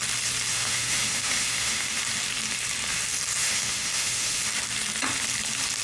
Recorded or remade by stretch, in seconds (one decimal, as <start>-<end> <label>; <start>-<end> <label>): 0.0-0.5 recorded; 0.5-2.0 remade; 2.0-3.4 recorded; 3.4-4.4 remade; 4.4-5.8 recorded